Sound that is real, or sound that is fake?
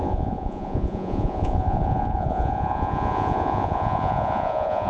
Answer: fake